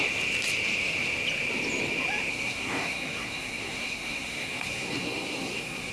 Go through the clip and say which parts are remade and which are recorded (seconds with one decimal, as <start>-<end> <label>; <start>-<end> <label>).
0.0-2.3 recorded; 2.3-5.9 remade